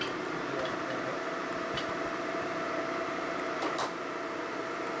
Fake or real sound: fake